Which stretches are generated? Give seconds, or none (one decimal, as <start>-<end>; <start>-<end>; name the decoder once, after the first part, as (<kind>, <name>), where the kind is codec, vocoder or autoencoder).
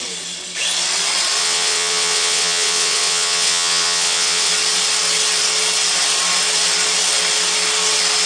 1.4-4.5 (vocoder, WaveNeXt)